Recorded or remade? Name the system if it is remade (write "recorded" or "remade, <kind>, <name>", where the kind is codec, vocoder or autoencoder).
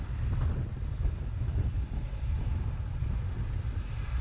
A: recorded